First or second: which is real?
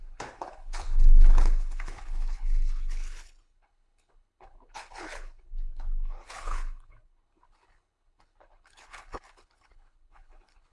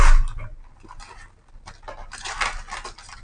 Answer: second